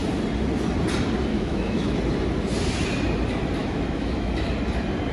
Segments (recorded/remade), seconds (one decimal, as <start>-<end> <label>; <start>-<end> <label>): 0.0-1.3 recorded; 1.3-2.0 remade; 2.0-3.6 recorded; 3.6-4.3 remade; 4.3-5.1 recorded